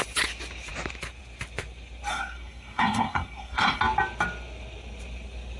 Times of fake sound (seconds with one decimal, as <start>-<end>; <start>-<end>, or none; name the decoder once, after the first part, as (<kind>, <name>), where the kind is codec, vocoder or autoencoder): 2.1-3.8 (codec, SNAC)